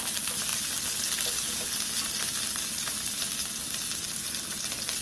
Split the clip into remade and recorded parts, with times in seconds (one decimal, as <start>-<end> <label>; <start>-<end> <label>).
0.0-5.0 recorded